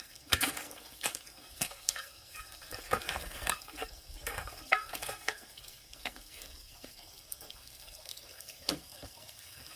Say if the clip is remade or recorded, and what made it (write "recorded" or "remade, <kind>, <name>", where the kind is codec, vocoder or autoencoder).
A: remade, codec, SNAC